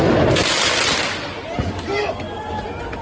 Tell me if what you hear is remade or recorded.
recorded